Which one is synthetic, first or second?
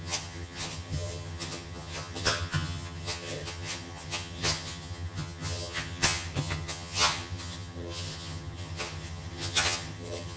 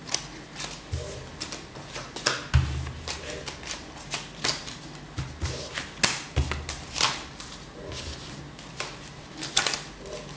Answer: first